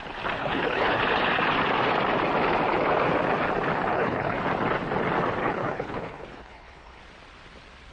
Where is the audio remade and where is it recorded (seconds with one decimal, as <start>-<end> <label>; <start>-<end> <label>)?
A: 0.0-0.4 recorded; 0.4-1.0 remade; 1.0-3.9 recorded; 3.9-4.4 remade; 4.4-5.4 recorded; 5.4-7.0 remade; 7.0-7.9 recorded